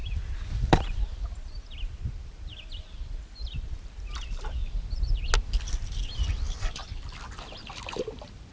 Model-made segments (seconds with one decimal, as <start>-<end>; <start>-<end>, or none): 0.0-4.6; 6.3-8.5